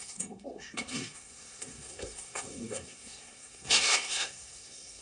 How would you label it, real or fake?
fake